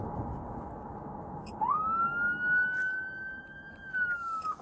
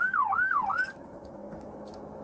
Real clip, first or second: first